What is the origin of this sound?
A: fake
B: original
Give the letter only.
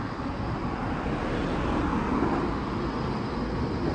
B